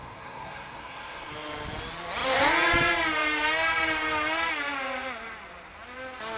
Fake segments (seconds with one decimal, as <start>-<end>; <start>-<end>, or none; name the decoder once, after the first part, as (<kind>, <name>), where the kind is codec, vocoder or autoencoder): 0.0-1.3 (codec, SNAC)